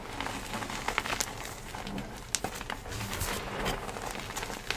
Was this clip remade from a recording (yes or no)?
no